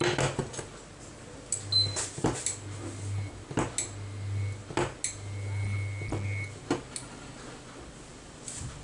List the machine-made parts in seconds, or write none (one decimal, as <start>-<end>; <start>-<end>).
none